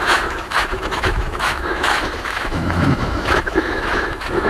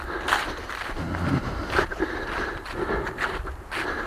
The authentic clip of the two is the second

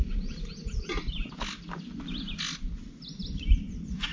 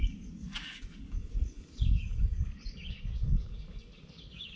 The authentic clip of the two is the first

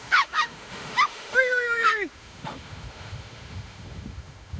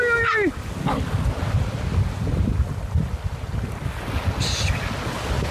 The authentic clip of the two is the second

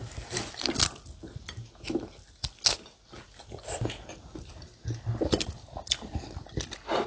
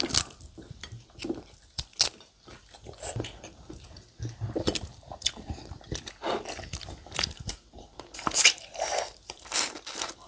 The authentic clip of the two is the first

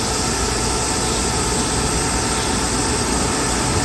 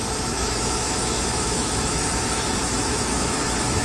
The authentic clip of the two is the first